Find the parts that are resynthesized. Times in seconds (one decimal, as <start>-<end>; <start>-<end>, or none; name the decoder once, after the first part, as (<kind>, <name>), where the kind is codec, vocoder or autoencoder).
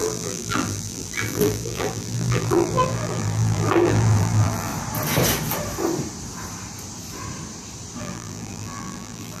0.0-4.7 (vocoder, BigVGAN v2); 8.0-9.4